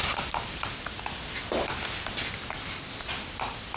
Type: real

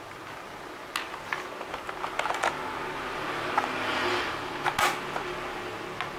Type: real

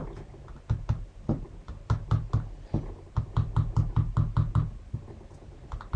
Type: real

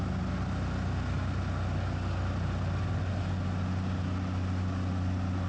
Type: real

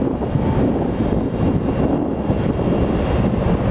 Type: real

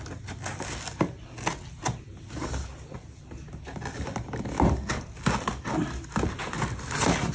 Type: real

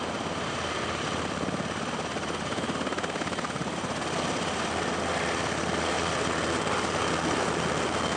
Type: real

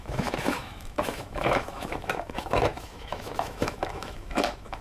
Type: fake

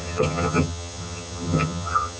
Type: fake